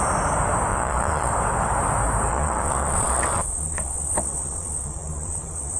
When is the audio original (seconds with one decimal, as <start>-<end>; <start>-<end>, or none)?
0.0-0.7; 1.3-2.3